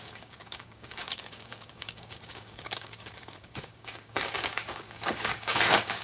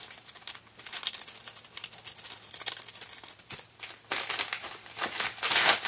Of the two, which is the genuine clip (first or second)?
second